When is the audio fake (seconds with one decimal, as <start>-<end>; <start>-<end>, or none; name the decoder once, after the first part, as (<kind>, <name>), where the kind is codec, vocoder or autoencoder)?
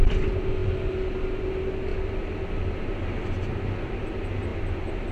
none